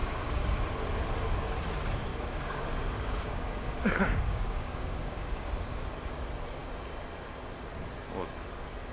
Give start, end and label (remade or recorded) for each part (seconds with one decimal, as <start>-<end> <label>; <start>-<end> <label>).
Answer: 0.0-0.7 remade; 0.7-2.1 recorded; 2.1-5.8 remade; 5.8-8.9 recorded